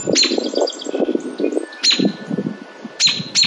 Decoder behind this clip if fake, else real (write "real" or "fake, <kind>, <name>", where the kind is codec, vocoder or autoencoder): real